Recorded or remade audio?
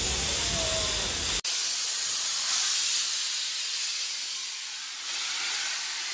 recorded